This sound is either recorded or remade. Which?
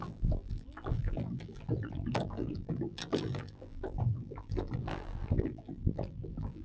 remade